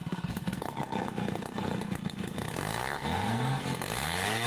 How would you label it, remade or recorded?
remade